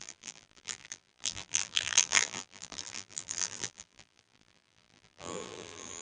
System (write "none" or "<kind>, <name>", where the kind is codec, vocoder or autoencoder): vocoder, BigVGAN v2